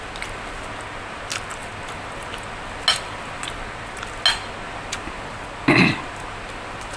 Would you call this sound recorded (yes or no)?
yes